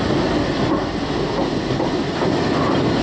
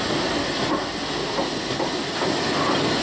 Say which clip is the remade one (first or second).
first